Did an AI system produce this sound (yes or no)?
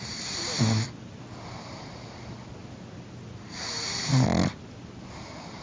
no